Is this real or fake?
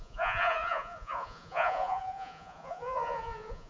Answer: fake